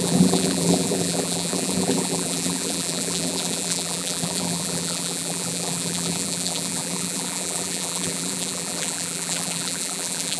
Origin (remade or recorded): remade